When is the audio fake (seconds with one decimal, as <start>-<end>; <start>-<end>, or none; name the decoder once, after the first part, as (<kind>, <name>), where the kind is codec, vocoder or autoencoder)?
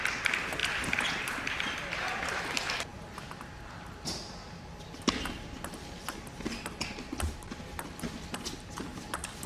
none